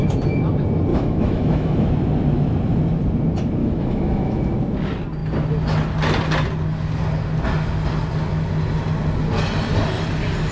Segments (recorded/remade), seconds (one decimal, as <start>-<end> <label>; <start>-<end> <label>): 0.0-0.9 recorded; 0.9-1.9 remade; 1.9-3.6 recorded; 3.6-4.4 remade; 4.4-10.5 recorded